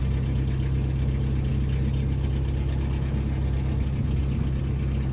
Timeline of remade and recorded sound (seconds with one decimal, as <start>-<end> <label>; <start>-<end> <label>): 0.0-5.1 recorded

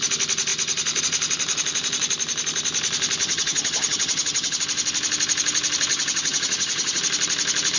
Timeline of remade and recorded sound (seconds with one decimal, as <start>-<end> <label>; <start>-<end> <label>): 0.0-3.2 recorded; 3.2-4.6 remade; 4.6-5.9 recorded; 5.9-7.0 remade; 7.0-7.8 recorded

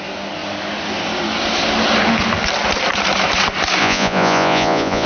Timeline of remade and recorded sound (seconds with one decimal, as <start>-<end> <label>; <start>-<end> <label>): 0.0-3.8 recorded; 3.8-5.1 remade

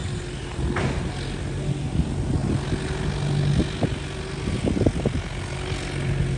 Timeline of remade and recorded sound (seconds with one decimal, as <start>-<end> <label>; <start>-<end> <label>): 0.0-6.4 recorded

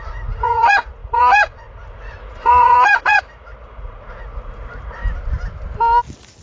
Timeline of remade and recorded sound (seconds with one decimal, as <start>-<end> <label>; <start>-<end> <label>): 0.0-5.0 remade; 5.0-6.4 recorded

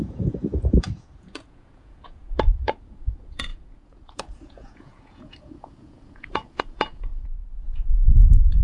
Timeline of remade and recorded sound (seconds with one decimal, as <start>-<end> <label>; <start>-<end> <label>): 0.0-8.6 remade